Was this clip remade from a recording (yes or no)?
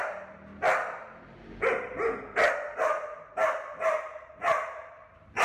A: no